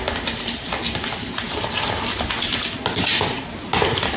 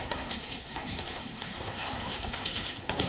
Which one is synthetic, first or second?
second